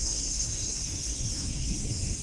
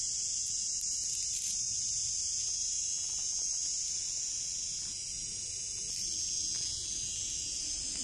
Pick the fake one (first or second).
first